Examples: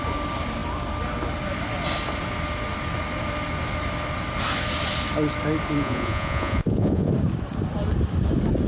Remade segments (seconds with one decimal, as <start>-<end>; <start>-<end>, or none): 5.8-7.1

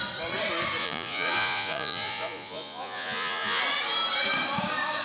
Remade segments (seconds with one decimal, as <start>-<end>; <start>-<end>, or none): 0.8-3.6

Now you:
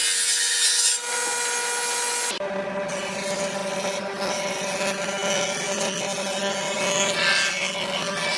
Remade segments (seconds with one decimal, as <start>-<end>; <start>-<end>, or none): none